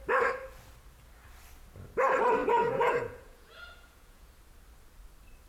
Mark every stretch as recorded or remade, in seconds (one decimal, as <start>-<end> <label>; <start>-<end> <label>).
0.0-2.4 recorded; 2.4-4.3 remade; 4.3-5.5 recorded